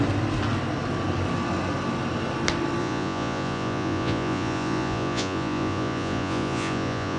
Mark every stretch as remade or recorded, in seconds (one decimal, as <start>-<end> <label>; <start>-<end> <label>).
0.0-2.8 recorded; 2.8-7.2 remade